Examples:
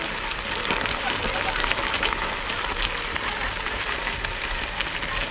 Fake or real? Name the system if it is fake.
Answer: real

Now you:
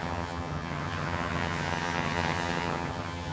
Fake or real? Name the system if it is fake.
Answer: fake, vocoder, HiFi-GAN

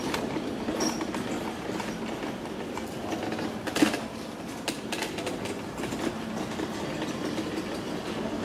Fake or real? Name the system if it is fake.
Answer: real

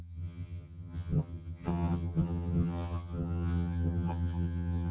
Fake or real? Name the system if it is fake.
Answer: fake, vocoder, HiFi-GAN